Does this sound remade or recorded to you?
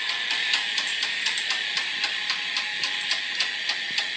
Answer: recorded